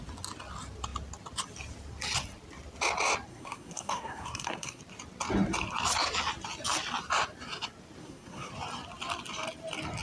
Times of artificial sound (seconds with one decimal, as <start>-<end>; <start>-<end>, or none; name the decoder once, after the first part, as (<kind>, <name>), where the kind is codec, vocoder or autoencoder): 3.3-4.8 (codec, SNAC); 8.0-8.5